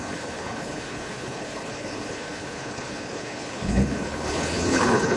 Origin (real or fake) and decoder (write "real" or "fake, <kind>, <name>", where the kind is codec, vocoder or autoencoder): fake, codec, HILCodec